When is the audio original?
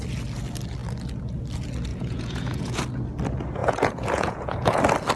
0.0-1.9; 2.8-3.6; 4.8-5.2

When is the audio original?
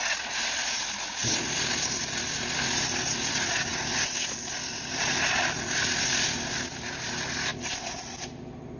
0.0-3.7; 6.5-7.5; 8.2-8.8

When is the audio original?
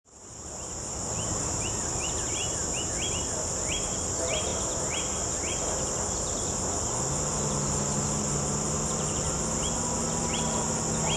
0.0-11.2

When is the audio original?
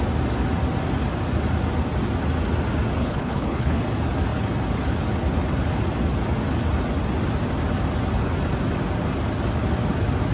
0.0-3.0; 3.8-10.3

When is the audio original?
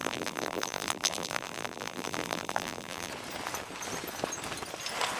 3.1-5.2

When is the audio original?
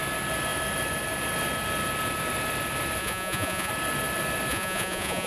0.0-3.0; 3.7-4.5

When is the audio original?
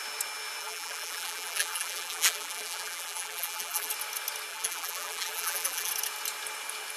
0.0-0.6; 3.9-4.5; 5.9-7.0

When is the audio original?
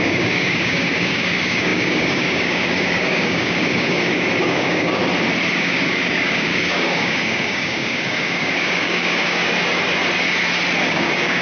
5.0-5.5; 9.4-10.8